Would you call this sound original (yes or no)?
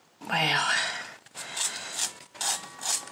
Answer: yes